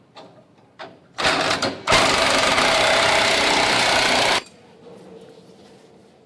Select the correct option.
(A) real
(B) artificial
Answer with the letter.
A